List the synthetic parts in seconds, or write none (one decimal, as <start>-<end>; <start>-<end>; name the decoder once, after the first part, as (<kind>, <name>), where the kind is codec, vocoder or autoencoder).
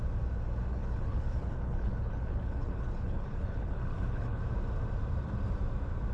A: 0.7-4.4 (codec, HILCodec)